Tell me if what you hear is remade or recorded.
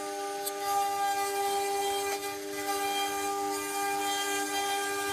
recorded